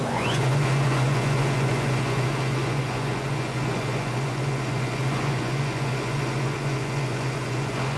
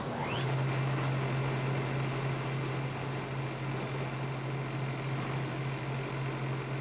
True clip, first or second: second